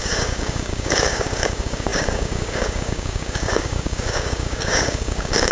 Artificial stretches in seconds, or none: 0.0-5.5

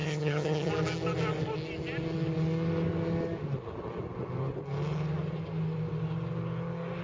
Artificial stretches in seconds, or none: 0.0-0.7

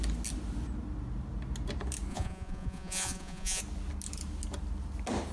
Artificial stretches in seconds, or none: 2.1-3.6

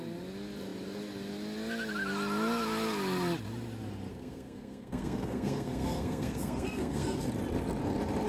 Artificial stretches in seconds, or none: 4.1-7.2

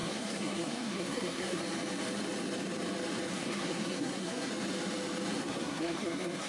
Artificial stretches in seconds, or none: 0.0-1.6; 3.3-4.5; 5.3-6.5